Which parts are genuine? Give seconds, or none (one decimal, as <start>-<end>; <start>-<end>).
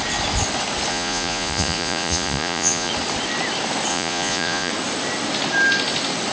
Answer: 0.0-0.9; 2.9-3.9; 4.7-6.3